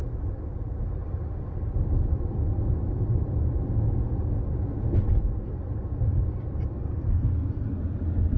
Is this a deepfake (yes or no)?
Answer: no